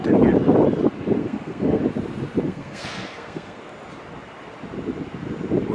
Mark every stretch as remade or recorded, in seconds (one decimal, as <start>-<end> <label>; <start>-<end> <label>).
0.0-1.2 recorded; 1.2-1.8 remade; 1.8-2.4 recorded; 2.4-3.6 remade; 3.6-5.7 recorded